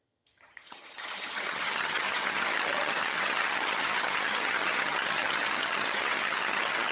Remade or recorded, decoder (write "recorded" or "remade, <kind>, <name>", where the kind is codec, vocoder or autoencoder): remade, vocoder, HiFi-GAN